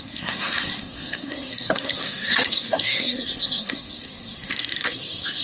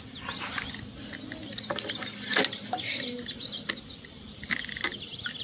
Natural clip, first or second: second